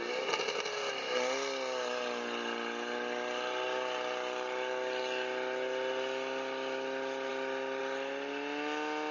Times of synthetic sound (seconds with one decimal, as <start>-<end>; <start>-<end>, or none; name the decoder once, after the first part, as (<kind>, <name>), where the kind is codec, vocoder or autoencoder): none